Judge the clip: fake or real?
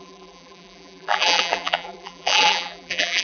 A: fake